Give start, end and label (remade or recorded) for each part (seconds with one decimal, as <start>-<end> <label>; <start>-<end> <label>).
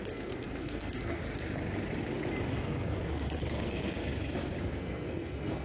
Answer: 0.0-1.2 remade; 1.2-2.6 recorded; 2.6-4.0 remade; 4.0-4.6 recorded; 4.6-5.6 remade